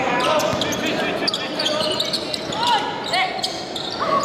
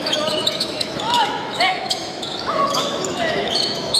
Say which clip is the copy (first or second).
second